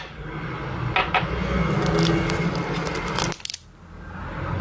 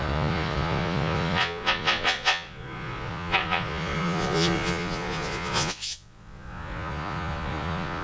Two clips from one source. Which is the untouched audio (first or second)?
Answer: first